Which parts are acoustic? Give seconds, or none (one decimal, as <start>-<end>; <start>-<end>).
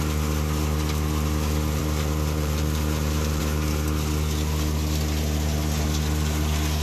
0.0-1.8; 3.4-6.8